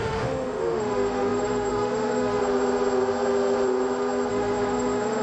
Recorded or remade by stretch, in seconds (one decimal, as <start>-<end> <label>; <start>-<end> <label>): 0.0-2.4 remade; 2.4-4.3 recorded; 4.3-5.2 remade

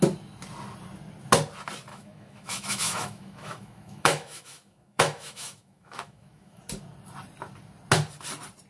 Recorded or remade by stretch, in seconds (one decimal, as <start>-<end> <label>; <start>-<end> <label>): 0.0-1.9 recorded; 1.9-6.6 remade; 6.6-8.7 recorded

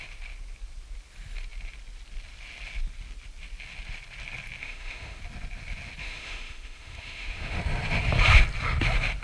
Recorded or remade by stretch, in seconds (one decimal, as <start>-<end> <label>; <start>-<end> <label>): 0.0-4.6 recorded; 4.6-5.2 remade; 5.2-6.0 recorded; 6.0-7.6 remade; 7.6-9.2 recorded

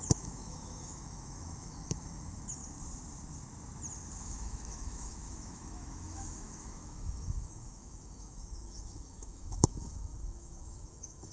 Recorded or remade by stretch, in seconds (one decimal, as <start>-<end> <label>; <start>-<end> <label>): 0.0-2.6 remade; 2.6-4.2 recorded; 4.2-11.3 remade

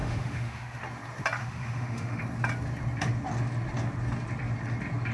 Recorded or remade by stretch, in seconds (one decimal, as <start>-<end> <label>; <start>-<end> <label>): 0.0-0.8 remade; 0.8-1.4 recorded; 1.4-2.2 remade; 2.2-5.1 recorded

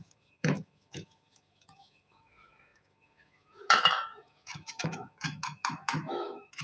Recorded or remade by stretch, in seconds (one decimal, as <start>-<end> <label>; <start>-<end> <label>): 0.0-6.6 remade

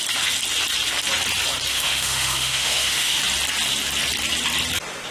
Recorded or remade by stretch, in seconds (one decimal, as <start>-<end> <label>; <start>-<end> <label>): 0.0-1.7 recorded; 1.7-3.2 remade; 3.2-5.1 recorded